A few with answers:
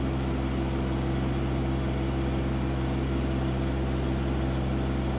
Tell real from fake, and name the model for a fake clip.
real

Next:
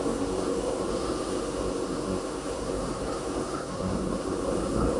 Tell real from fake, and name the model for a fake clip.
fake, codec, SNAC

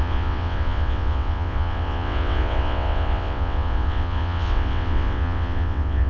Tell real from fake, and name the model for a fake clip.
fake, vocoder, WaveNeXt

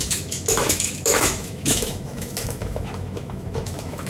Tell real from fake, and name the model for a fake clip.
fake, autoencoder, DAC-VAE